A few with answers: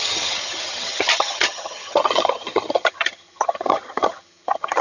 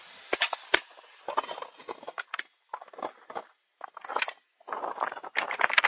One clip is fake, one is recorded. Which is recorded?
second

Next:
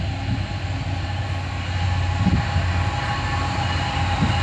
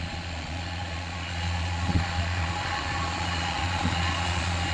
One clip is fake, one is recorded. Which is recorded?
first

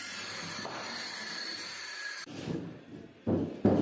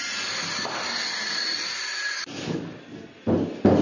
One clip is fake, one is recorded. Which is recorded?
second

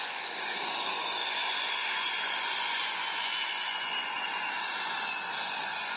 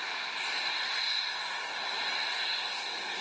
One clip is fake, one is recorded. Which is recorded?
second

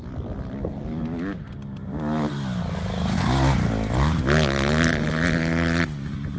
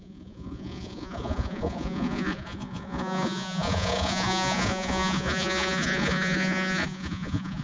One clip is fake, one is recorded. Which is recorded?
first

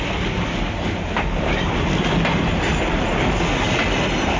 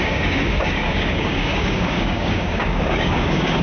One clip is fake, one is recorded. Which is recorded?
first